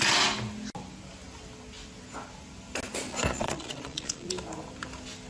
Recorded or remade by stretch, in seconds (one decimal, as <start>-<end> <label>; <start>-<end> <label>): 0.0-3.1 recorded; 3.1-4.3 remade; 4.3-5.3 recorded